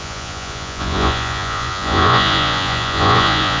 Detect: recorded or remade remade